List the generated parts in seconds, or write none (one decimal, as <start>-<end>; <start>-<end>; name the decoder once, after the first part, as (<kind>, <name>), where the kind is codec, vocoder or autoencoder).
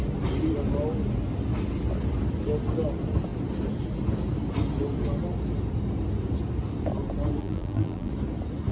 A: 7.4-8.1 (vocoder, BigVGAN v2)